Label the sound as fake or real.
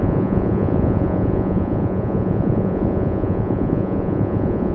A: fake